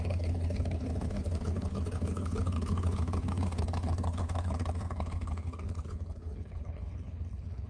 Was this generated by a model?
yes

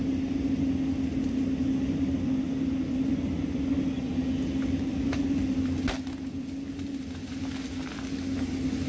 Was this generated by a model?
no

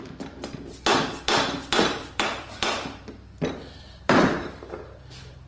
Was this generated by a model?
yes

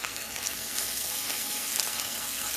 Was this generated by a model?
yes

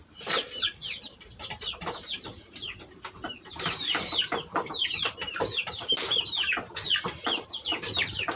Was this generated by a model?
yes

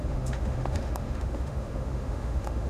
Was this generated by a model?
yes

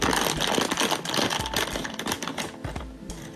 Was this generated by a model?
no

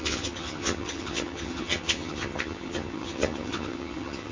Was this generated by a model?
yes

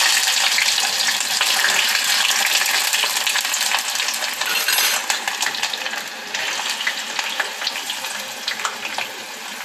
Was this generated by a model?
no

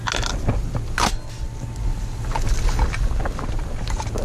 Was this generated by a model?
no